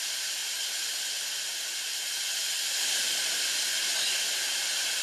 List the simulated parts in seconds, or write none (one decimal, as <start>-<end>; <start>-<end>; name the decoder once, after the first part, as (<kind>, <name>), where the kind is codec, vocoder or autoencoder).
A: none